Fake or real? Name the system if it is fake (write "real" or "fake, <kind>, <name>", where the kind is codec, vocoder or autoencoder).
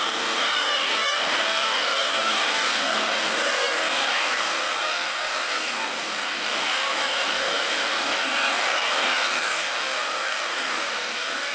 fake, codec, DAC